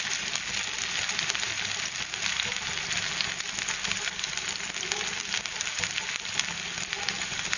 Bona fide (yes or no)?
yes